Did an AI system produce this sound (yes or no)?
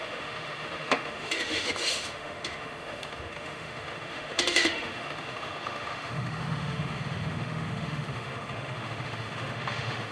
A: yes